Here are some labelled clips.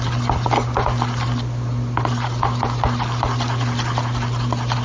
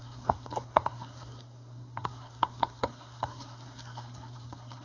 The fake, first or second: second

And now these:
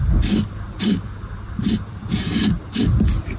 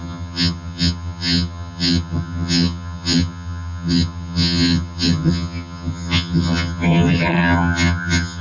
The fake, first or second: second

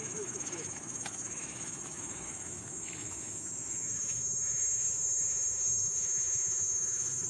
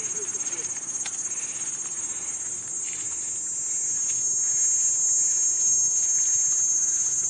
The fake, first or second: first